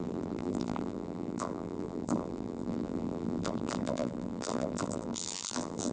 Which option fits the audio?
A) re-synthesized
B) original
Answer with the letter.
A